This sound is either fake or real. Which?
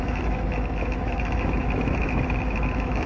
fake